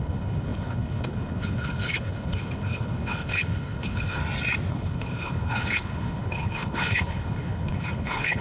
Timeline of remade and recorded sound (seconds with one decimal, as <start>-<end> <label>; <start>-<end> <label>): 0.0-4.2 remade; 4.2-4.7 recorded; 4.7-8.4 remade